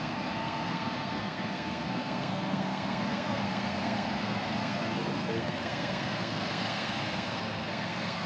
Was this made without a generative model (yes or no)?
no